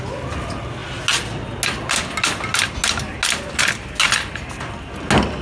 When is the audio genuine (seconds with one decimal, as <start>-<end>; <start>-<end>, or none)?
0.0-5.4